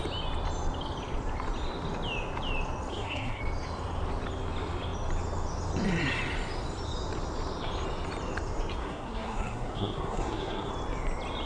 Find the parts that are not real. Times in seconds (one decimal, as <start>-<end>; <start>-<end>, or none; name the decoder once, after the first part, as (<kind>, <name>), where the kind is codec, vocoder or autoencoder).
2.9-3.4 (codec, SNAC); 8.8-10.7